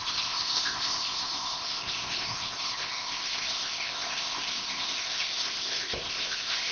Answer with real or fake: fake